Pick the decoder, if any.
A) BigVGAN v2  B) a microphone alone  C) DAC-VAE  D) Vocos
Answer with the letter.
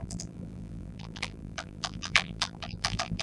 A